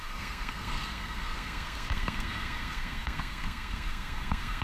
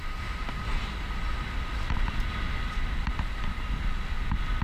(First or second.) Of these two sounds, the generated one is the first